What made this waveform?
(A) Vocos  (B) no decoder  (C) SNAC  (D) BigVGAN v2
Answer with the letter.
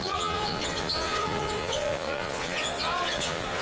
A